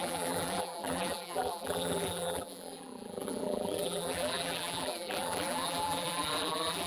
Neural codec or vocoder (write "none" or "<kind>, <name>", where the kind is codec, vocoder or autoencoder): vocoder, BigVGAN v2